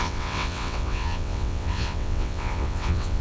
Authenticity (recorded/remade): remade